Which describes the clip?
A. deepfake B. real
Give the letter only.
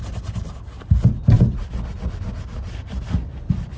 B